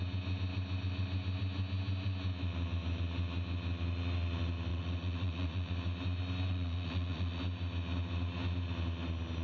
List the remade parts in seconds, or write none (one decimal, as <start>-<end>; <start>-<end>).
4.7-5.7; 6.5-7.4